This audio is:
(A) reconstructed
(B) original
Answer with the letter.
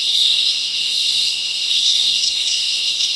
A